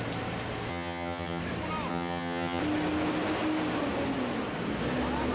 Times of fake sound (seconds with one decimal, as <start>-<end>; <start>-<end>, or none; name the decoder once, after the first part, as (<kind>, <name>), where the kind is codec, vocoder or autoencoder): 0.7-1.4 (vocoder, HiFi-GAN); 1.9-2.6